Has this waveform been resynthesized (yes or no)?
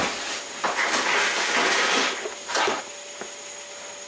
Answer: no